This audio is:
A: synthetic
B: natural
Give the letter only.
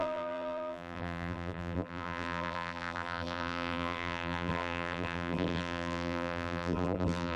A